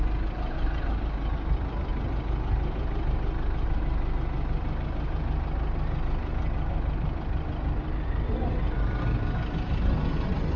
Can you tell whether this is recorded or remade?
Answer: recorded